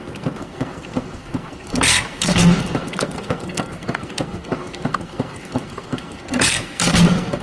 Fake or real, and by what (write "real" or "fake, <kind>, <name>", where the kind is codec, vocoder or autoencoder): fake, codec, SNAC